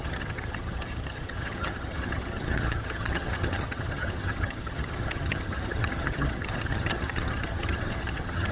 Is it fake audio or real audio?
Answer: fake